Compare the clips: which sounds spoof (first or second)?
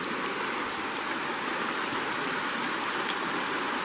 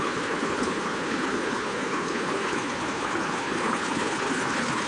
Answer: second